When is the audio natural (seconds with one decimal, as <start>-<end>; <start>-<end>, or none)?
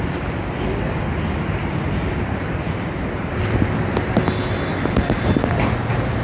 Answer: 0.0-1.6; 3.3-6.2